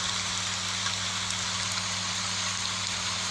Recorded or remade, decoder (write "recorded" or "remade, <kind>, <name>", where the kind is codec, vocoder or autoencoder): recorded